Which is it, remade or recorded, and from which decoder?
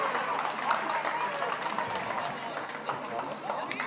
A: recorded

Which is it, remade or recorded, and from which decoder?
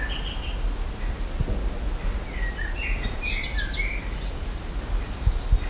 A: recorded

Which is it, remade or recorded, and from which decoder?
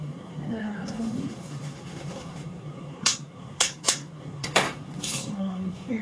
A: remade, codec, SNAC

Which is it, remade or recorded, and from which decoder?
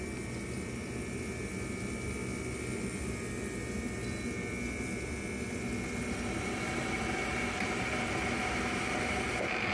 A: recorded